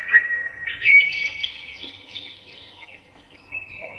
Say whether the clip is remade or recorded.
remade